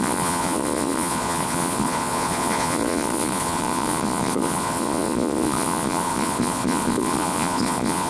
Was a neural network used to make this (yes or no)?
yes